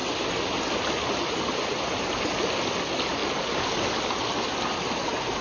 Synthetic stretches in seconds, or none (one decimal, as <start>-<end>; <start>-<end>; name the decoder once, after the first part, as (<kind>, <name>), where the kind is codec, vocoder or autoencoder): 0.0-2.4 (vocoder, BigVGAN v2)